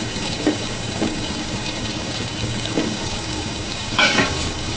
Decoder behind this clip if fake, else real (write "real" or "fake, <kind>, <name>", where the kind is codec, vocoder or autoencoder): fake, codec, DAC